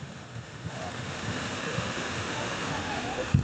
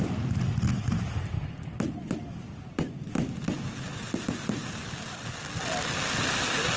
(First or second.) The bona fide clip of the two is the second